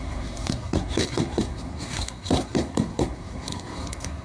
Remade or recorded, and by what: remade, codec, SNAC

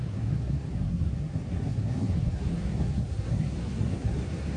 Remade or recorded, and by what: remade, codec, SNAC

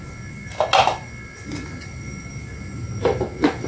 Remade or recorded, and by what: recorded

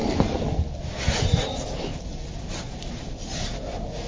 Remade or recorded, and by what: recorded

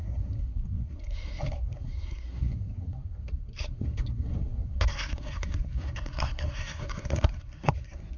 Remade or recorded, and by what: remade, codec, SNAC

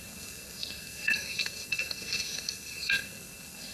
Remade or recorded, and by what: remade, codec, SNAC